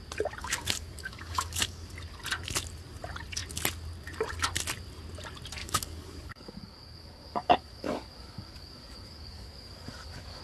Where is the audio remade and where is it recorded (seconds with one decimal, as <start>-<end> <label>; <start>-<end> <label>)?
0.0-0.4 recorded; 0.4-1.9 remade; 1.9-5.6 recorded; 5.6-10.4 remade

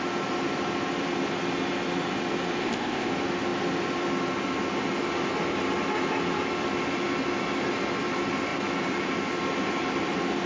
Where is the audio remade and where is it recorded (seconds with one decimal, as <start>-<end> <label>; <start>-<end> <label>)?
0.0-2.6 recorded; 2.6-3.1 remade; 3.1-10.5 recorded

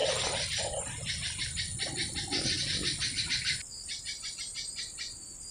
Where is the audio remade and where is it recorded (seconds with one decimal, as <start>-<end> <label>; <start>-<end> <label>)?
0.0-5.5 recorded

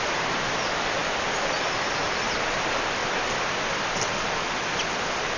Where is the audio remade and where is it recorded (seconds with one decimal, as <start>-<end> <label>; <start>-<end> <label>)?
0.0-5.4 recorded

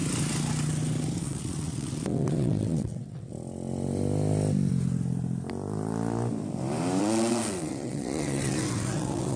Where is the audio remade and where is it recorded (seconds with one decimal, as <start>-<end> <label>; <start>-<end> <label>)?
0.0-1.2 recorded; 1.2-3.3 remade; 3.3-7.0 recorded; 7.0-9.4 remade

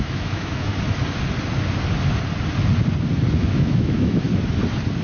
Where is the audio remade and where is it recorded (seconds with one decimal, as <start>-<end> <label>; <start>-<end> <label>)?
0.0-0.7 remade; 0.7-3.3 recorded; 3.3-4.3 remade; 4.3-5.0 recorded